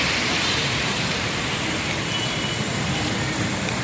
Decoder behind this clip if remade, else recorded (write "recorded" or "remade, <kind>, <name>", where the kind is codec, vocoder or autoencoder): remade, vocoder, BigVGAN v2